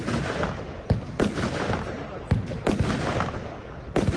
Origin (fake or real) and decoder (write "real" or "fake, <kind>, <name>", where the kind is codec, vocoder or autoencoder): real